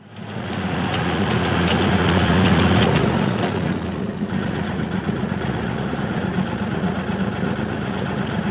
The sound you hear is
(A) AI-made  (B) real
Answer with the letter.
A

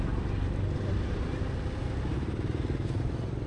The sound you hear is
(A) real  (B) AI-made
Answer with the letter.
A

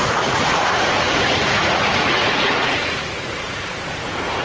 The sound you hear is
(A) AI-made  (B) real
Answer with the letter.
A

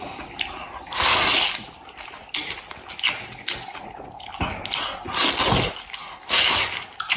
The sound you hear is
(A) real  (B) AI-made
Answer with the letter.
A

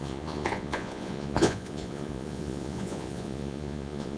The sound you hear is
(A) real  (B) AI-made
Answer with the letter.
B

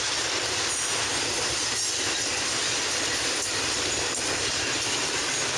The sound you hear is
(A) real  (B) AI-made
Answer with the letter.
A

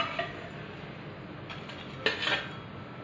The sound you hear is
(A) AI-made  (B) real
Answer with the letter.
B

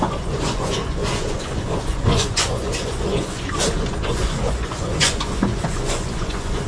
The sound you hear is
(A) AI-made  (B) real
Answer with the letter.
A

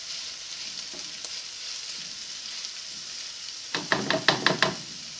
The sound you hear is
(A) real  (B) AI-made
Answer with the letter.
A